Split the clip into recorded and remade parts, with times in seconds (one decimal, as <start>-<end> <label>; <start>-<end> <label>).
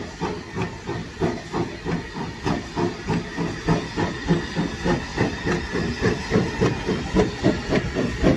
0.0-8.4 recorded